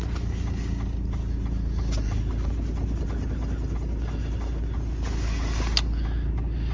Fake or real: real